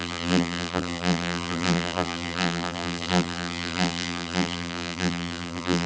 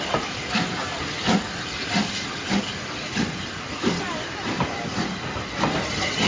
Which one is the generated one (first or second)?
first